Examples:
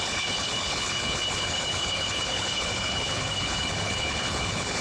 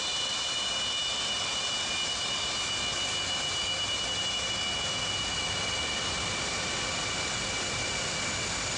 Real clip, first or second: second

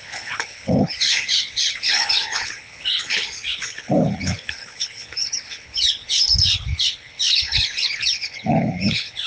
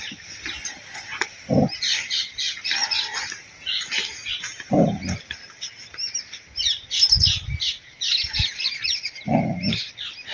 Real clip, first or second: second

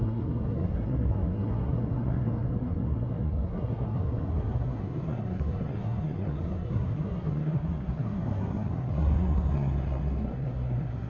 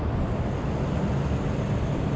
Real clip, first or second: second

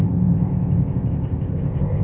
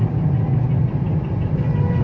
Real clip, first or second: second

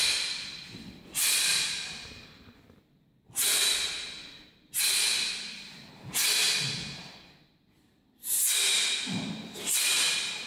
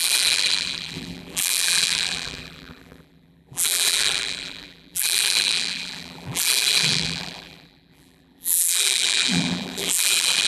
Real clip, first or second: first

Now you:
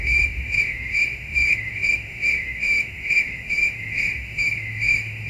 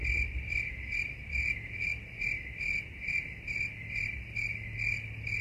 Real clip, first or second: second